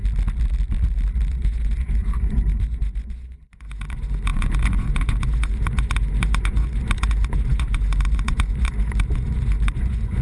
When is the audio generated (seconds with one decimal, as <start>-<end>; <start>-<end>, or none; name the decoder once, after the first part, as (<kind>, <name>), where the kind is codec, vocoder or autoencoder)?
1.3-10.2 (vocoder, Vocos)